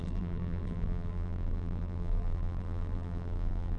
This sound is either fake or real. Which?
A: fake